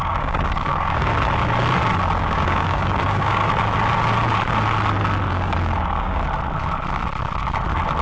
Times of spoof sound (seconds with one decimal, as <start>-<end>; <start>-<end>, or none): 0.0-1.1; 2.2-3.4; 5.3-6.2